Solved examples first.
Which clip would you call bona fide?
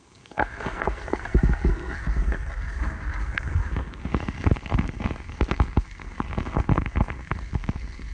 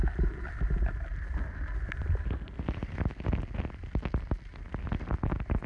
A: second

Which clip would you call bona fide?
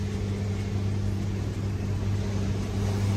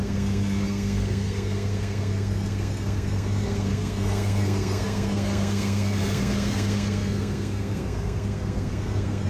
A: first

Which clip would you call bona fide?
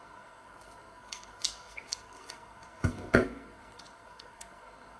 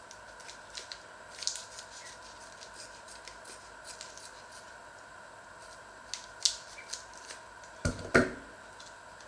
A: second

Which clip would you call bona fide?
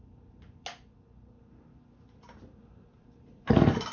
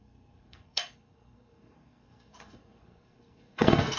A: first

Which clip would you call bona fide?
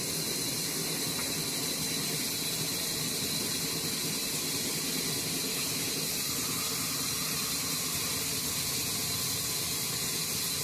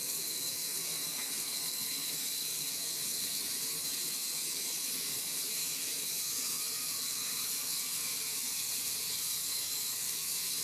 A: first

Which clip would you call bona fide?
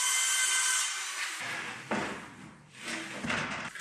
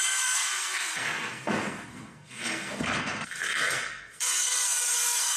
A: first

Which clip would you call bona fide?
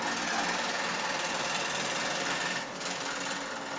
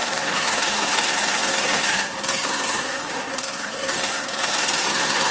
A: first